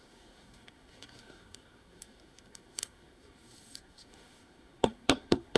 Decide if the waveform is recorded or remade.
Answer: remade